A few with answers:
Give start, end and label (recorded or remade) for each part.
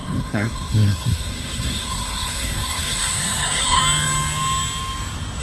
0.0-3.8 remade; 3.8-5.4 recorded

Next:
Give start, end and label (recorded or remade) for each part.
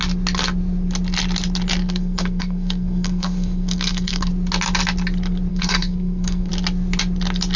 0.0-1.8 recorded; 1.8-4.3 remade; 4.3-5.5 recorded; 5.5-6.5 remade; 6.5-7.6 recorded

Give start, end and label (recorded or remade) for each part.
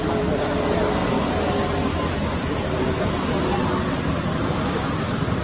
0.0-5.4 recorded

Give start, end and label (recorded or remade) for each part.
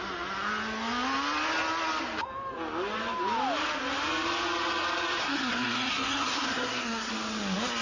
0.0-5.2 recorded; 5.2-7.1 remade; 7.1-7.8 recorded